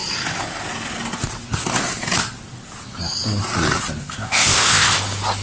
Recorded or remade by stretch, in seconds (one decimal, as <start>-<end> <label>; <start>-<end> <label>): 0.0-4.0 recorded; 4.0-5.0 remade; 5.0-5.4 recorded